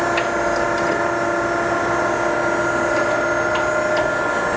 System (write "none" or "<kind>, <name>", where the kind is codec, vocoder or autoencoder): none